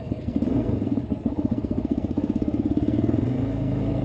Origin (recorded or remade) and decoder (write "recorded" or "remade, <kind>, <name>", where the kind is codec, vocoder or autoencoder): remade, codec, SNAC